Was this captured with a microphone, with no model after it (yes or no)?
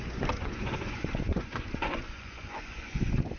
no